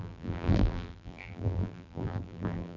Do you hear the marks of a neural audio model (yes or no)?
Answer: yes